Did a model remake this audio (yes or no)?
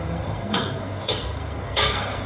yes